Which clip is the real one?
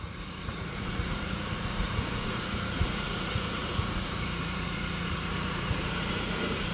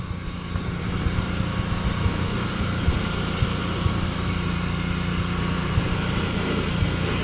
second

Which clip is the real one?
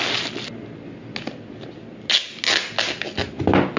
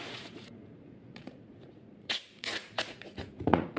first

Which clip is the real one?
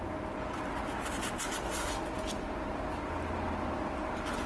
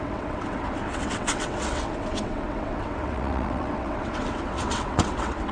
first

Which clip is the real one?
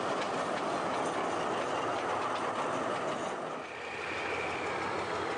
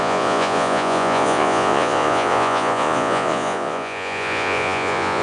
first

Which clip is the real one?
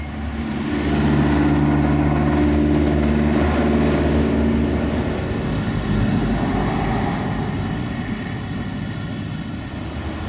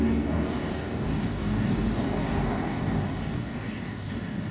first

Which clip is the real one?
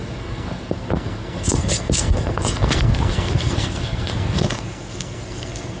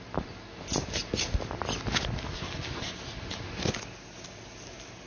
second